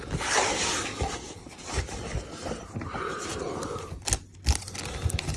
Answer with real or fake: real